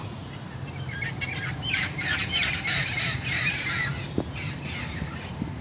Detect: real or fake fake